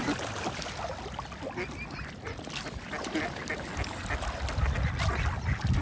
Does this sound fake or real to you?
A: real